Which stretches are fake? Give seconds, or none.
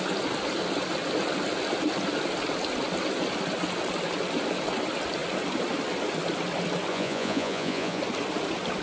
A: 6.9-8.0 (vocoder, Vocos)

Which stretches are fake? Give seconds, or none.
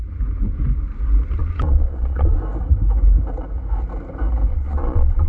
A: 1.4-2.4 (vocoder, Vocos); 4.5-5.3